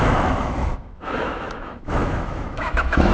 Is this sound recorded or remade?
remade